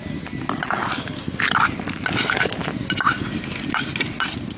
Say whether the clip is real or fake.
real